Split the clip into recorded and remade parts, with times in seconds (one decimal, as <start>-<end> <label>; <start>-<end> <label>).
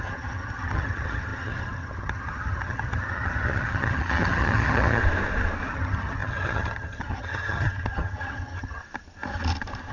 0.0-5.0 remade; 5.0-5.7 recorded; 5.7-8.8 remade; 8.8-9.9 recorded